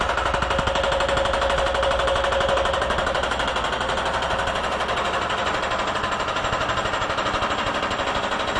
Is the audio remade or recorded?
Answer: recorded